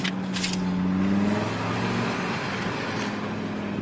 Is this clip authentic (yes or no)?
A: yes